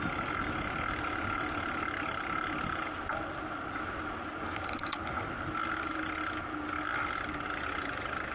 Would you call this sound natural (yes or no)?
yes